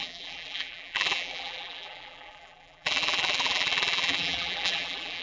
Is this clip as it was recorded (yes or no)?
no